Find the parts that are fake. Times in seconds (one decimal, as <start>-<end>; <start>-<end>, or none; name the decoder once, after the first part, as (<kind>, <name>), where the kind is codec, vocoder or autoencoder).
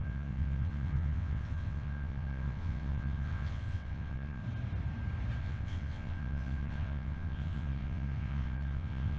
0.0-4.4 (vocoder, WaveNeXt); 5.4-9.2